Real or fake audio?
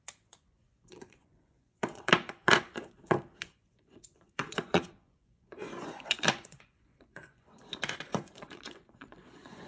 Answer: fake